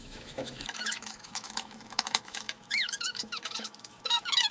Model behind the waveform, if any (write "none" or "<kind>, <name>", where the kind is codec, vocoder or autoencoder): autoencoder, DAC-VAE